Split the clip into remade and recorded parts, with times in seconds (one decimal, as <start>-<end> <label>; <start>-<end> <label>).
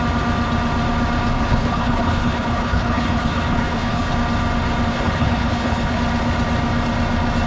0.0-1.3 recorded; 1.3-4.1 remade; 4.1-4.9 recorded; 4.9-6.0 remade; 6.0-7.5 recorded